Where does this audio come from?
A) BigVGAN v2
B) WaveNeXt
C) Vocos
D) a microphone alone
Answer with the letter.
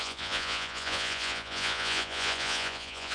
C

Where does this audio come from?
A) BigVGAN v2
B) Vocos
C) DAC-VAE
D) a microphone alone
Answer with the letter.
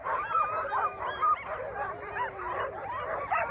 A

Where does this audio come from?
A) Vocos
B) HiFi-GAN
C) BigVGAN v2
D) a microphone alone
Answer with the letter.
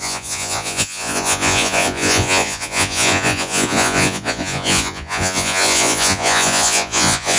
A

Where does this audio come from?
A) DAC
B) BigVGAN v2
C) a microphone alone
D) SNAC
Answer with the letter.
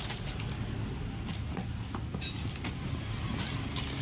C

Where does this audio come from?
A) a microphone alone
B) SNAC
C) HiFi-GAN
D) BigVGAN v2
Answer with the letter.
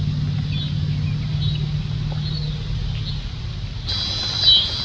A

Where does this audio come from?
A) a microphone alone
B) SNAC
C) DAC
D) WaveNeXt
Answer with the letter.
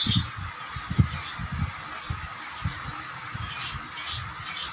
A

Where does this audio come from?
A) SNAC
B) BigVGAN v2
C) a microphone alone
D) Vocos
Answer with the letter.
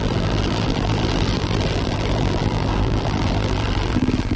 B